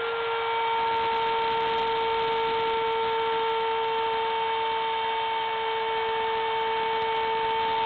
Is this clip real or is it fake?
real